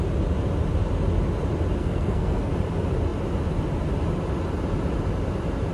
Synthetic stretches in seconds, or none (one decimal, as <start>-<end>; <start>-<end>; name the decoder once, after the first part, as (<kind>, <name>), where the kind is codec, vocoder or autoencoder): 1.8-2.5 (codec, SNAC)